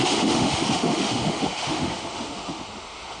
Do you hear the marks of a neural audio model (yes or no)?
yes